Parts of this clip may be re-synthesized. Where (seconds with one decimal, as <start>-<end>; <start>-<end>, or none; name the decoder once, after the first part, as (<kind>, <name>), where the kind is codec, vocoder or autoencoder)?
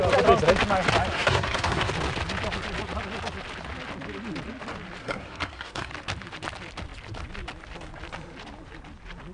1.1-1.9 (codec, SNAC); 5.0-5.9